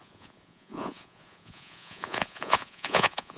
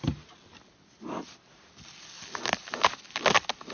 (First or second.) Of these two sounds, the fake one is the first